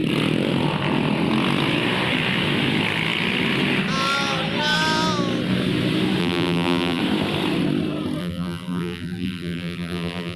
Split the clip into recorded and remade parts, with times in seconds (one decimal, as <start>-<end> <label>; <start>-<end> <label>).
0.0-6.2 recorded; 6.2-7.0 remade; 7.0-8.2 recorded; 8.2-10.4 remade